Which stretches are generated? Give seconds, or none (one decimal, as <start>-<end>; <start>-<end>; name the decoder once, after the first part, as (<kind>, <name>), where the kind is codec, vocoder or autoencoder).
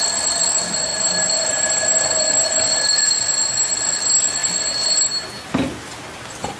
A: none